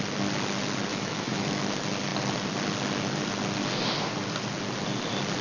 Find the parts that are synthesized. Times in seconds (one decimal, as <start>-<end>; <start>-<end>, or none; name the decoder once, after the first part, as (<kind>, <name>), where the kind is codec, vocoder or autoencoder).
0.9-1.6 (autoencoder, DAC-VAE)